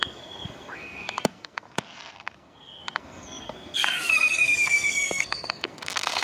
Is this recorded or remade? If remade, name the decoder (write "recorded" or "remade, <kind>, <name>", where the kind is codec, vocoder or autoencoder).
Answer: remade, codec, SNAC